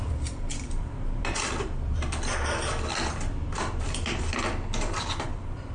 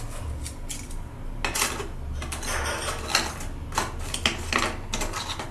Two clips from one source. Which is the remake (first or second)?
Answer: first